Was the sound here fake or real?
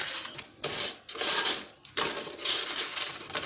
real